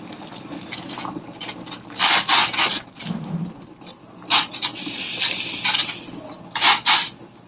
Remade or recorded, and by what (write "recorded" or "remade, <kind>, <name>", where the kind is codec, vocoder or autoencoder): recorded